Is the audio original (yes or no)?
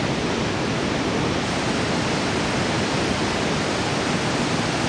yes